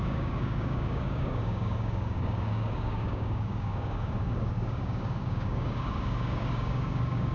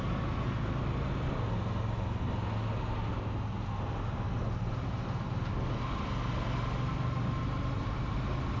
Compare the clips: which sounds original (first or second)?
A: second